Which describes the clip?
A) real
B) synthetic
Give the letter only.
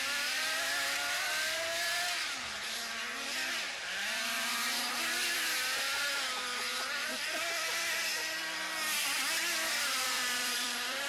B